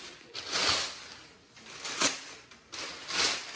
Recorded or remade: recorded